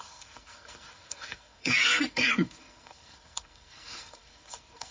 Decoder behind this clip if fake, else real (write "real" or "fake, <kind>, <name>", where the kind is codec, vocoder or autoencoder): fake, codec, SNAC